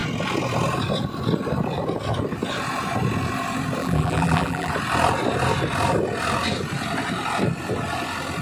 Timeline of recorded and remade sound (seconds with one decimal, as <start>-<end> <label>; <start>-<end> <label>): 0.0-3.8 recorded; 3.8-4.7 remade; 4.7-8.4 recorded